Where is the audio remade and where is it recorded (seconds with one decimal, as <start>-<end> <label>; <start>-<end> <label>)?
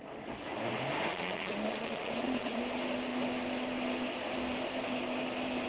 0.0-1.1 recorded; 1.1-2.6 remade; 2.6-5.7 recorded